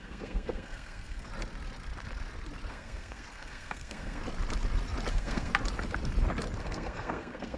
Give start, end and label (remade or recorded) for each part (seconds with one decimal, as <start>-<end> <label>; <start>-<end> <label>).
0.0-1.3 remade; 1.3-2.7 recorded; 2.7-4.2 remade; 4.2-5.1 recorded; 5.1-5.5 remade; 5.5-6.6 recorded; 6.6-7.6 remade